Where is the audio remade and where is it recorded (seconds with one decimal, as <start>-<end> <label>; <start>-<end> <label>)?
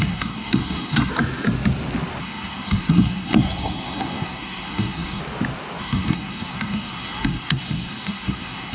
0.0-1.1 remade; 1.1-2.2 recorded; 2.2-5.2 remade; 5.2-5.8 recorded; 5.8-8.7 remade